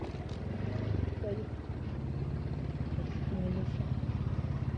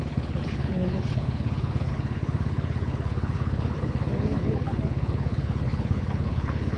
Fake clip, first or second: second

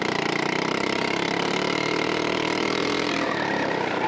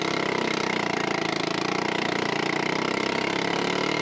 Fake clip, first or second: first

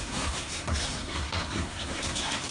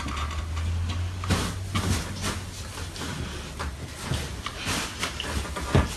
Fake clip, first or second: first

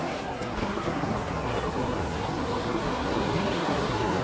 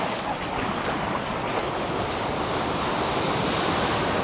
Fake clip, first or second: first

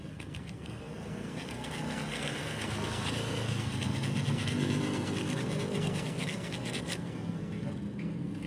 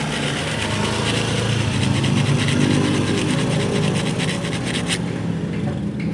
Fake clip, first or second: first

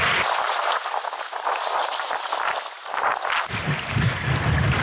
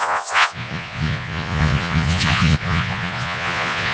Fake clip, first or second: second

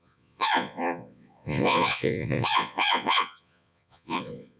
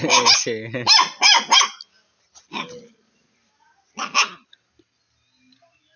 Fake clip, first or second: first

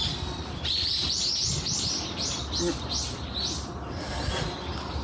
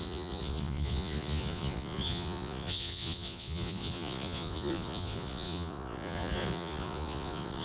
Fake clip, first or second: second